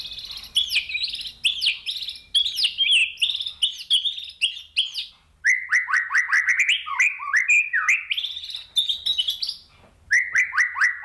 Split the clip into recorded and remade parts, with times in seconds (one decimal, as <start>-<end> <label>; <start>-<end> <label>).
0.0-11.0 recorded